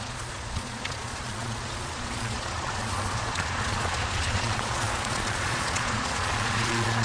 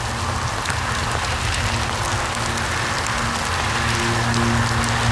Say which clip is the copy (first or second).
first